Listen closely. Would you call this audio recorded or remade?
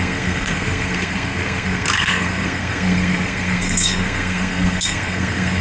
remade